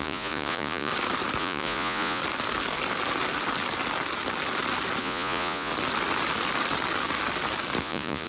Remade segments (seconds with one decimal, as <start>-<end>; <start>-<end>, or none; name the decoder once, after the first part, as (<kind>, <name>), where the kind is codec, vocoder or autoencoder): 0.0-0.9 (vocoder, Vocos); 1.4-2.2; 5.0-5.7; 7.8-8.3